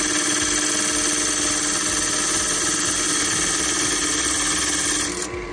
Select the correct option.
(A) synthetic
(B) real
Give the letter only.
B